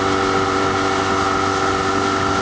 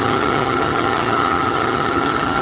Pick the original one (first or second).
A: first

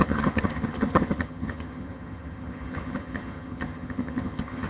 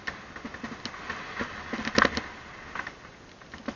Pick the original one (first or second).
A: second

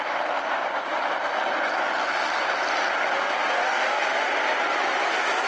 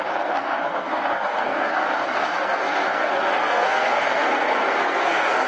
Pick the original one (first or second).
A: first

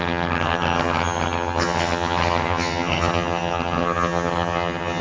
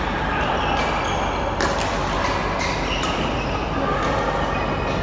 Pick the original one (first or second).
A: second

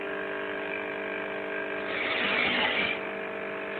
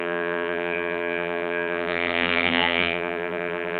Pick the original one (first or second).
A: first